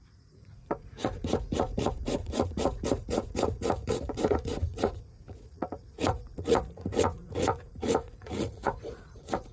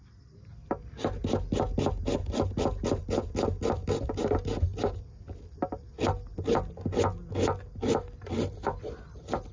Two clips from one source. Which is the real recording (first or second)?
second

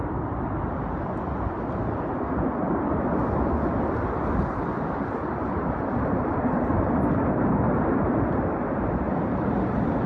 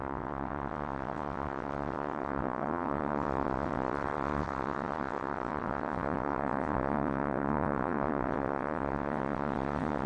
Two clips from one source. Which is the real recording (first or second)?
first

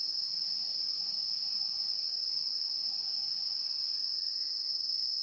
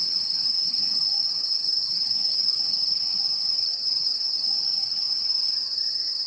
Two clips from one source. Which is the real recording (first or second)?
first